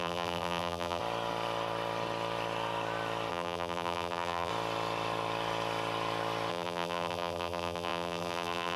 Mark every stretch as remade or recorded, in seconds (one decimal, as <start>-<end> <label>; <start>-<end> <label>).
0.0-1.0 remade; 1.0-3.3 recorded; 3.3-4.5 remade; 4.5-6.5 recorded; 6.5-8.8 remade